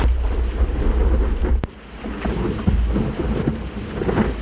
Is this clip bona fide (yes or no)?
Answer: yes